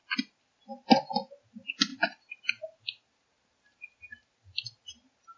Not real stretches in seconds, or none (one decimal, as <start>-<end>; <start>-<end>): none